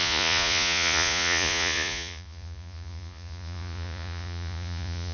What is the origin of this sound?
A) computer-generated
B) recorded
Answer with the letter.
A